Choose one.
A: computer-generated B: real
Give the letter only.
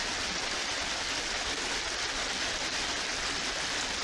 B